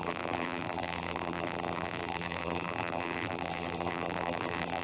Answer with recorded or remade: remade